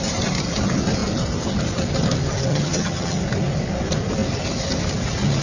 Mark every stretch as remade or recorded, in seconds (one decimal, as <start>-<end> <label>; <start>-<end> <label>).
0.0-2.5 recorded; 2.5-3.2 remade; 3.2-5.4 recorded